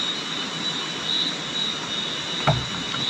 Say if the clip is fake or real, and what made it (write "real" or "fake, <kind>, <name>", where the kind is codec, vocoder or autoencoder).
real